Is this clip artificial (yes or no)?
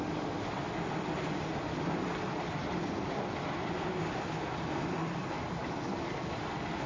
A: no